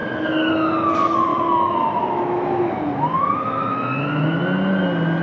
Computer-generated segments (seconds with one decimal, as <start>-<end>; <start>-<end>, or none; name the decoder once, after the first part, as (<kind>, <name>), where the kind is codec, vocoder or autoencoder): 0.0-0.5 (autoencoder, DAC-VAE); 1.3-4.4